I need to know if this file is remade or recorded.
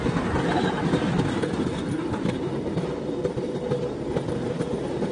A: recorded